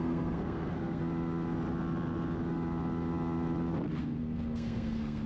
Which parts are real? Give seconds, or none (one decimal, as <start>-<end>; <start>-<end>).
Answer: 1.0-4.0